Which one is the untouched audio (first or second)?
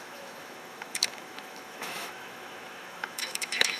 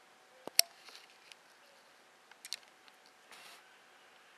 second